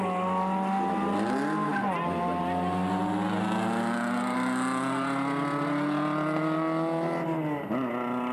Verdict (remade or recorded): recorded